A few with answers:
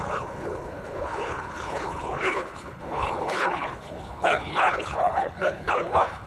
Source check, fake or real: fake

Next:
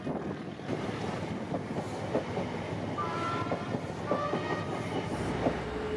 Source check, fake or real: real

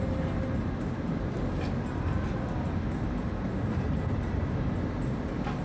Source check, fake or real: real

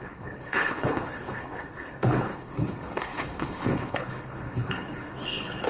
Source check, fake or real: fake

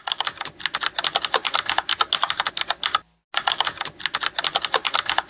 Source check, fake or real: real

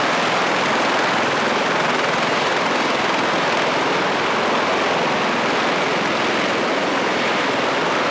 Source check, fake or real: real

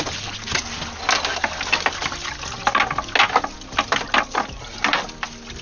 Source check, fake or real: real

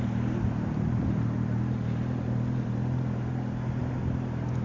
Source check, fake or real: real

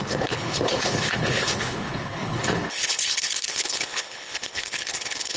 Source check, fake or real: fake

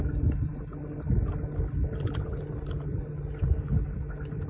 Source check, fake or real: real